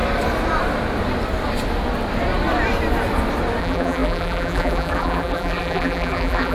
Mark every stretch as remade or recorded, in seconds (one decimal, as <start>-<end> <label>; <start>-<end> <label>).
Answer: 0.0-3.6 recorded; 3.6-6.5 remade